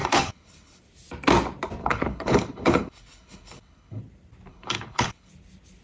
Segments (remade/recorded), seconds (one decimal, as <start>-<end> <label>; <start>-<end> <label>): 0.0-0.8 remade; 0.8-1.8 recorded; 1.8-4.0 remade; 4.0-4.5 recorded; 4.5-5.3 remade; 5.3-5.8 recorded